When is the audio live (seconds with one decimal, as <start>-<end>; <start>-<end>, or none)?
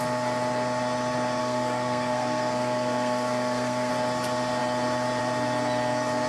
0.0-1.4; 3.9-6.3